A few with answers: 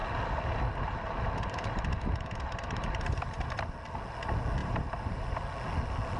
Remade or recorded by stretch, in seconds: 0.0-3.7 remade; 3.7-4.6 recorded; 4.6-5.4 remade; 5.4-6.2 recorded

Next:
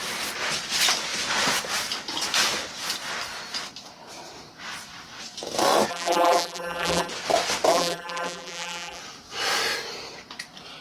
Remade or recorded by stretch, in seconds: 0.0-5.9 recorded; 5.9-7.1 remade; 7.1-7.7 recorded; 7.7-9.0 remade; 9.0-10.8 recorded

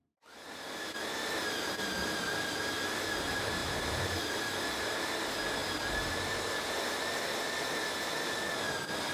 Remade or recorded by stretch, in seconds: 0.0-3.6 recorded; 3.6-4.4 remade; 4.4-9.1 recorded